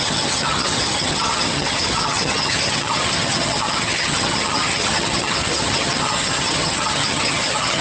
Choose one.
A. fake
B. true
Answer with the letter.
A